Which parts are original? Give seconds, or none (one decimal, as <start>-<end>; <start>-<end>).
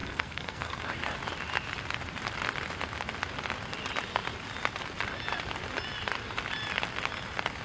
0.8-7.6